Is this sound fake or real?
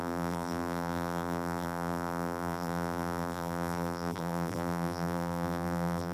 fake